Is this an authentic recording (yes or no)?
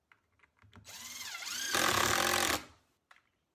yes